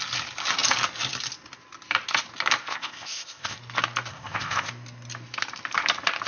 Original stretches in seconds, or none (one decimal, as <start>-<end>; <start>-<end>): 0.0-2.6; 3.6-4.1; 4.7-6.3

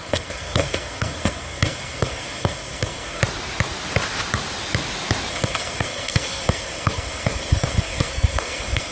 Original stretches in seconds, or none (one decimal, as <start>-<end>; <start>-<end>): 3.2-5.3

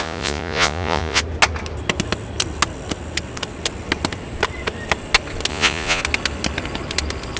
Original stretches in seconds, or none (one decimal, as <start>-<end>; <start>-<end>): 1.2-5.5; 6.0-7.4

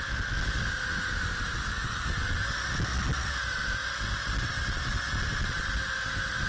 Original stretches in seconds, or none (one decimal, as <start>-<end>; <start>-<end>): 0.0-6.5

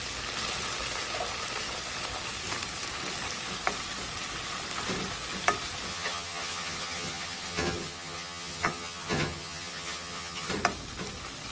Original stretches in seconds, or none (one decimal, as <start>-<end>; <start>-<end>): 0.0-5.9; 10.5-11.5